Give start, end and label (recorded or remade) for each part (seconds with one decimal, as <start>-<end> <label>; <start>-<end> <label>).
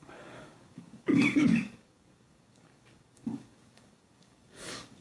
0.0-5.0 remade